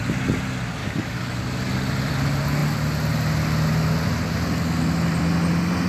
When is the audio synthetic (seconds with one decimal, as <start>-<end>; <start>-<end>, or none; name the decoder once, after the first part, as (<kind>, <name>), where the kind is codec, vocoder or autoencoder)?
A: 0.8-1.4 (codec, DAC)